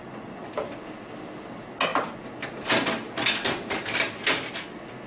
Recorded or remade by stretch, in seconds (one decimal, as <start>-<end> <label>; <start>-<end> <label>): 0.0-5.1 recorded